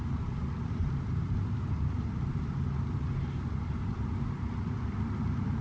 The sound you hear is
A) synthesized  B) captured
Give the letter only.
B